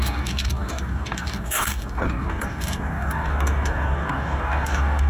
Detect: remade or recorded remade